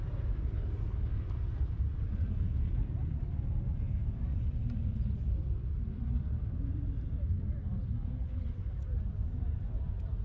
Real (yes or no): no